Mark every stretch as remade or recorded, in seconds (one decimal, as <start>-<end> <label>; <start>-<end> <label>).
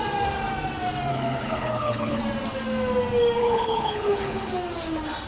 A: 0.0-1.1 recorded; 1.1-2.2 remade; 2.2-3.4 recorded; 3.4-4.5 remade; 4.5-5.3 recorded